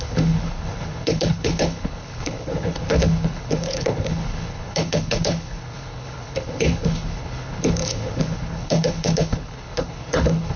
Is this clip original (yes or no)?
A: no